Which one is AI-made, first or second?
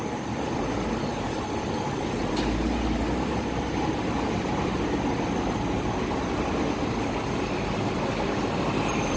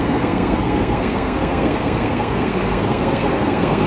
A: second